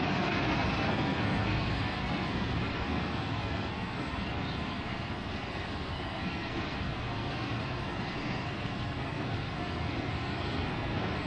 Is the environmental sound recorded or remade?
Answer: remade